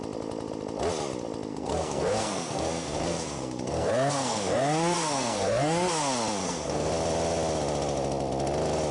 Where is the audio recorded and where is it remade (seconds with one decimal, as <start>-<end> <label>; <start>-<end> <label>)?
0.0-1.5 recorded; 1.5-5.9 remade; 5.9-6.4 recorded; 6.4-6.9 remade; 6.9-8.9 recorded